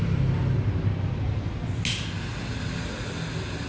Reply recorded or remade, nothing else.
recorded